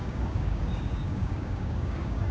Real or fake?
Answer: fake